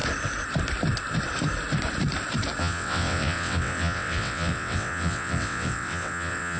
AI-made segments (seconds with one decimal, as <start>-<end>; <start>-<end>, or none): 2.6-6.6